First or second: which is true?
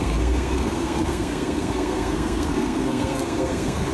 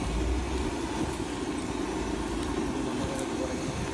second